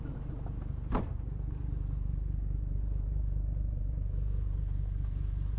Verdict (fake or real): fake